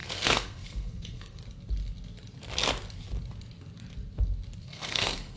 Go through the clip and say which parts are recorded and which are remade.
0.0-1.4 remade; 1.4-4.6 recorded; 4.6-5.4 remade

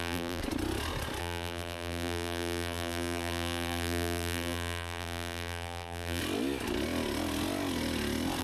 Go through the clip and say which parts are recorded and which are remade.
0.0-0.4 remade; 0.4-1.2 recorded; 1.2-6.2 remade; 6.2-8.4 recorded